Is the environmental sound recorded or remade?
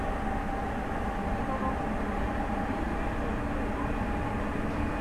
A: recorded